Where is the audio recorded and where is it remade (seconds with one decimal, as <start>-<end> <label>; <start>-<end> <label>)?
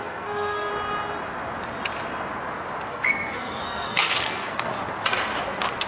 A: 0.0-0.7 remade; 0.7-2.9 recorded; 2.9-4.7 remade; 4.7-5.9 recorded